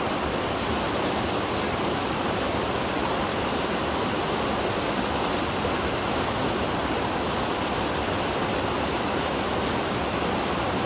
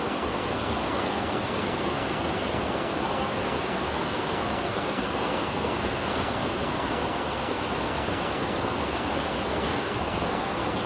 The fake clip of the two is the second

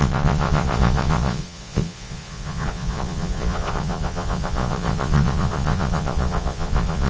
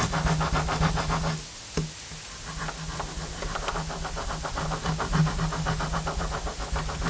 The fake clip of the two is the first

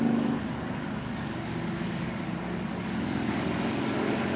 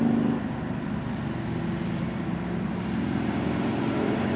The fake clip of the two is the first